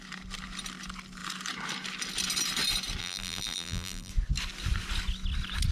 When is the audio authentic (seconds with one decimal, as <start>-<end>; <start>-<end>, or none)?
0.0-3.0; 4.1-5.7